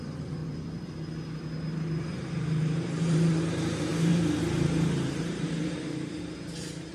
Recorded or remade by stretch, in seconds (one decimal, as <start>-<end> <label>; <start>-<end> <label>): 0.0-0.4 remade; 0.4-2.0 recorded; 2.0-6.9 remade